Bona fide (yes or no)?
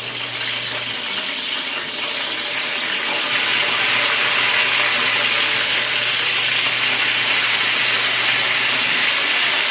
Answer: yes